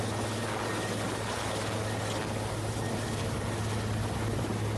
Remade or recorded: recorded